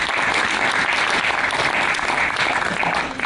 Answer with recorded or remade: recorded